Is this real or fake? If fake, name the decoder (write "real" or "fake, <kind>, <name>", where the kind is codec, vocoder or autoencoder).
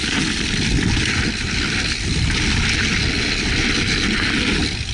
real